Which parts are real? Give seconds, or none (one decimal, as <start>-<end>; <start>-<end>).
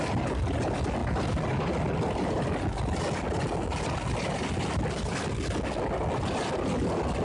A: 0.0-7.2